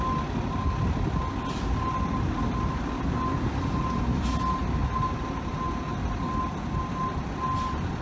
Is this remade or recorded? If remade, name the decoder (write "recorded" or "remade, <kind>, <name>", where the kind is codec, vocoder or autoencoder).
recorded